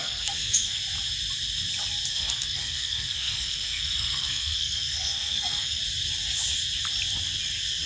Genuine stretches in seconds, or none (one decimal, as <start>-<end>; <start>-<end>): 0.8-2.1; 5.8-7.9